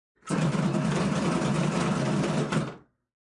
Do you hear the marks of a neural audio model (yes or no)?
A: no